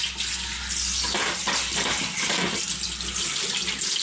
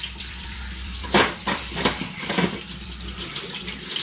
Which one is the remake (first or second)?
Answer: second